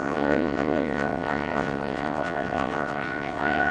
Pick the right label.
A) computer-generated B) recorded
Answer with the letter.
A